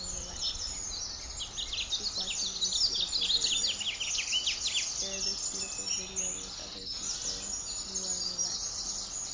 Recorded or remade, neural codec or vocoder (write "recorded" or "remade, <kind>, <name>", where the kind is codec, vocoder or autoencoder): recorded